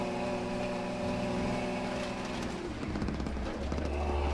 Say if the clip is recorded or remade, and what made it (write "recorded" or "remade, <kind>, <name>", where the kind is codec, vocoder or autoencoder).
recorded